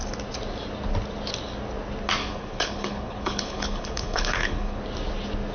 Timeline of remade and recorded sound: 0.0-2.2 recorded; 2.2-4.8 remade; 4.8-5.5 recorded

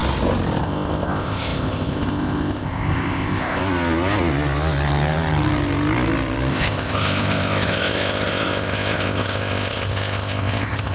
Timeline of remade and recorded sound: 0.0-0.6 recorded; 0.6-3.6 remade; 3.6-6.5 recorded; 6.5-10.9 remade

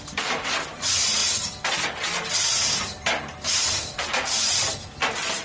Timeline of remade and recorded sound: 0.0-5.4 recorded

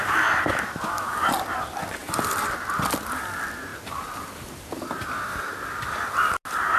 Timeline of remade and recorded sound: 0.0-2.0 recorded; 2.0-2.6 remade; 2.6-3.7 recorded; 3.7-5.0 remade; 5.0-6.8 recorded

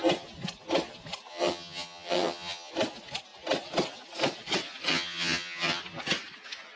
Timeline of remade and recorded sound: 0.0-1.3 recorded; 1.3-2.7 remade; 2.7-4.9 recorded; 4.9-5.8 remade; 5.8-6.8 recorded

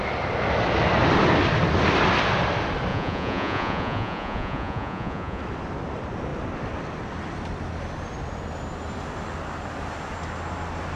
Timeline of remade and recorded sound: 0.0-2.9 recorded; 2.9-5.4 remade; 5.4-11.0 recorded